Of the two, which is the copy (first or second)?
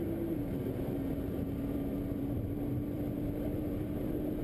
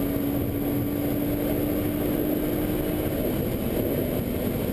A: first